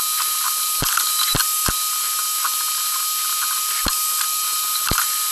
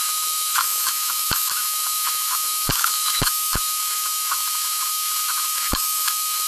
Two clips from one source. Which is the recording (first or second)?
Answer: first